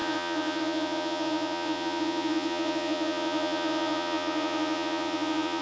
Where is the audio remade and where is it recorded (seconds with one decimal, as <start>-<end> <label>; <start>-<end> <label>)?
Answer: 0.0-5.6 remade